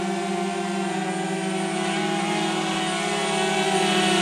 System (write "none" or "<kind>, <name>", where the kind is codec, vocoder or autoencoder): none